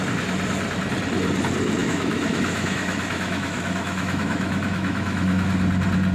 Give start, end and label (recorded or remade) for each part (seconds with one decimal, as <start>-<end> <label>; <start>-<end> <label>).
0.0-1.8 recorded; 1.8-5.5 remade; 5.5-6.1 recorded